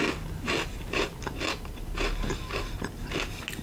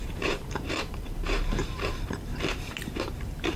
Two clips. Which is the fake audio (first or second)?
second